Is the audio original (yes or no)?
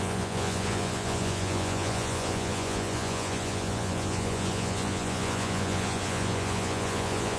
no